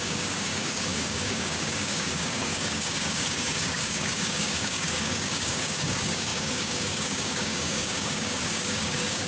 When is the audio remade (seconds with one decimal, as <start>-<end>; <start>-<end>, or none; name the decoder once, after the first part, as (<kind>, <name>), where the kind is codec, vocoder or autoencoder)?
0.0-9.3 (codec, DAC)